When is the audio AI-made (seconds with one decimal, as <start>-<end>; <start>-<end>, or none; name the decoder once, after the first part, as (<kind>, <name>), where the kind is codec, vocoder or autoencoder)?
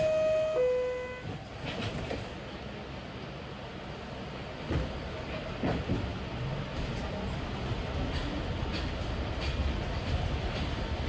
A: none